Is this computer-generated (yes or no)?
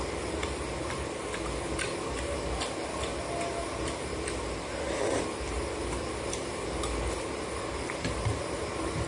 no